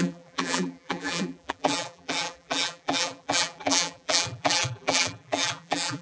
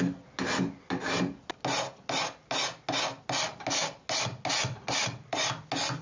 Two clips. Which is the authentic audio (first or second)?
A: second